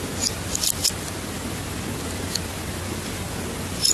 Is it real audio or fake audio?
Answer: real